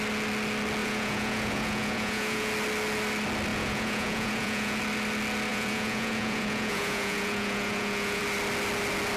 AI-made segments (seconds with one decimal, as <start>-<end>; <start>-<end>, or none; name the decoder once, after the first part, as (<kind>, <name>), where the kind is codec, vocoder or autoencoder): 0.8-2.5 (vocoder, Vocos); 3.5-4.8; 5.5-8.2